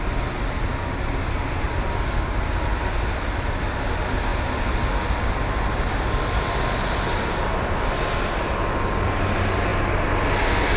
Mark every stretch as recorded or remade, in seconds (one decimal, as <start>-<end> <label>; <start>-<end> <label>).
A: 0.0-10.8 recorded